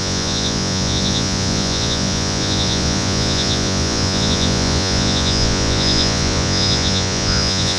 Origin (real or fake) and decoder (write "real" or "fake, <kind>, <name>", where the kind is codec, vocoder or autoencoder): fake, vocoder, Vocos